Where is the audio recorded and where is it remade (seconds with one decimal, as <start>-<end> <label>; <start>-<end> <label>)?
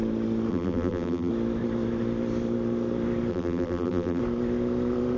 0.0-0.5 recorded; 0.5-1.3 remade; 1.3-3.3 recorded; 3.3-4.2 remade; 4.2-5.2 recorded